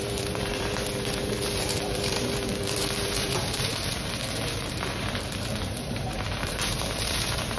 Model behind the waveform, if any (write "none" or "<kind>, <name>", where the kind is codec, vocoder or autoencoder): vocoder, BigVGAN v2